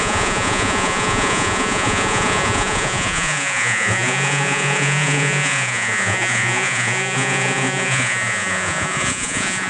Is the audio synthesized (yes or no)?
yes